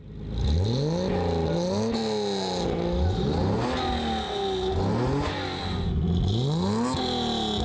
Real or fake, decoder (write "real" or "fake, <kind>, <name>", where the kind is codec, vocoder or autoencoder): real